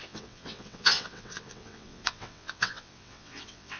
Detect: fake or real fake